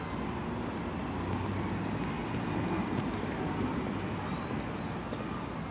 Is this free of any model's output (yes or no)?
yes